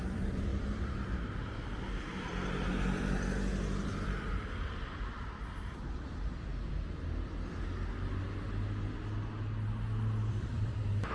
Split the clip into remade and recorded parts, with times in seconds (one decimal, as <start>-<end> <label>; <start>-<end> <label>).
0.0-0.5 remade; 0.5-4.0 recorded; 4.0-6.5 remade; 6.5-10.3 recorded; 10.3-11.1 remade